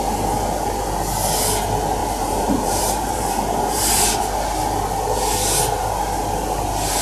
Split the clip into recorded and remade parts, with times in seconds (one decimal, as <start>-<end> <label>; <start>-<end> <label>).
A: 0.0-2.0 recorded; 2.0-4.2 remade; 4.2-7.0 recorded